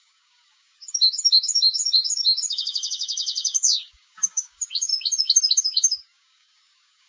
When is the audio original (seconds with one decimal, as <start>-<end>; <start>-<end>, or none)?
4.9-5.5